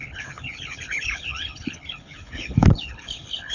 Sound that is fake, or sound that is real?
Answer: fake